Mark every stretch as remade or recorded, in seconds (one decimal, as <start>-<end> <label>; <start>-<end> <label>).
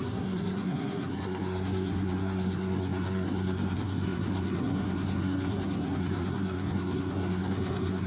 0.0-8.1 remade